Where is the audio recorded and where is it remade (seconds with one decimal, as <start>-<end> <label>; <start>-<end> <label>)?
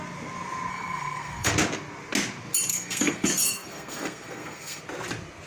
0.0-0.7 recorded; 0.7-1.5 remade; 1.5-2.7 recorded; 2.7-4.8 remade; 4.8-5.5 recorded